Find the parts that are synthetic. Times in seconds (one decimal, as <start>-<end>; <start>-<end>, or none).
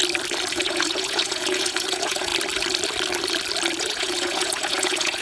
0.5-2.3; 3.8-5.2